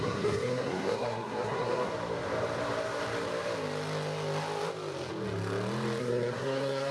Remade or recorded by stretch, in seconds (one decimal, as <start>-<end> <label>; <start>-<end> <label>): 0.0-1.9 remade; 1.9-6.0 recorded; 6.0-6.9 remade